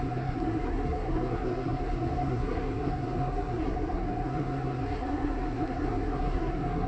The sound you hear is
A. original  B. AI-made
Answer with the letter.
B